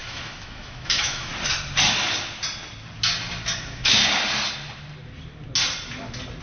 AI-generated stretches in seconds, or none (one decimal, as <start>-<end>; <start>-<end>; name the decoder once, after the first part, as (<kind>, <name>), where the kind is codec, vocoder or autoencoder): 0.0-1.3 (autoencoder, DAC-VAE); 3.6-4.0